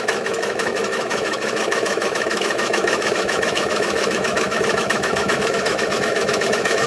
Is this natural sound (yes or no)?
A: no